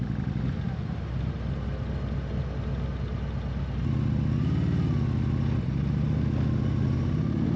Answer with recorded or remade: recorded